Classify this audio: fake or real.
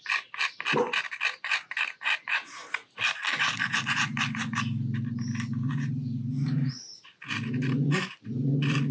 real